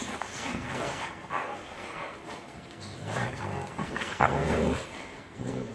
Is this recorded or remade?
remade